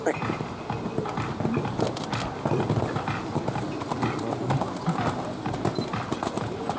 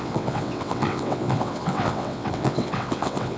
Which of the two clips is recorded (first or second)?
first